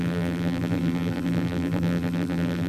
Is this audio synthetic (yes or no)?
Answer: yes